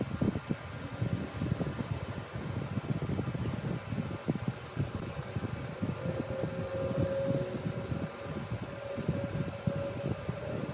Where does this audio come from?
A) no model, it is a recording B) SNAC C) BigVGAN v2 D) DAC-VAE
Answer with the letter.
A